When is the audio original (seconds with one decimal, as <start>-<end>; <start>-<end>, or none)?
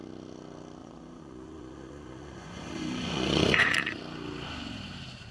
0.0-0.8; 4.0-5.3